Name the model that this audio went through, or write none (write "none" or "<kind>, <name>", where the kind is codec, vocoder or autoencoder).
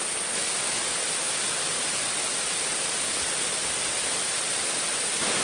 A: none